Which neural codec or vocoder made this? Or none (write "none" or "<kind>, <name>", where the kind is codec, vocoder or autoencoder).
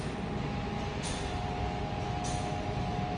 none